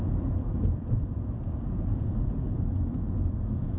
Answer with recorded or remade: remade